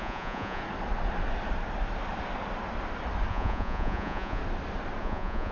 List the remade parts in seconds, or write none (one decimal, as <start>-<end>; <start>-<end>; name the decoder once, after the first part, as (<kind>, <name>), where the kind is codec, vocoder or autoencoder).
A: 0.0-0.6 (vocoder, Vocos); 3.3-4.4; 5.0-5.5

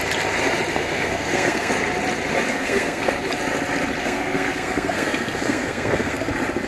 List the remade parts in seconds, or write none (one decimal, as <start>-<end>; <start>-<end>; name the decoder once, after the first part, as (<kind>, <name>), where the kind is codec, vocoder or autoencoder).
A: 0.7-1.7 (codec, SNAC); 2.5-3.1; 4.0-6.3

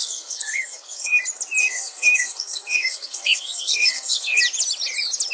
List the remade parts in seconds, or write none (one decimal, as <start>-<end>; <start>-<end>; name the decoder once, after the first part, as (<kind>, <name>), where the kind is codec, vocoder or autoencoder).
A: 0.0-1.2 (codec, SNAC); 1.6-4.4